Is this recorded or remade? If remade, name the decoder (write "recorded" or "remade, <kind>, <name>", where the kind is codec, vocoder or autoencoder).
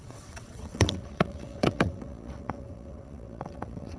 remade, vocoder, WaveNeXt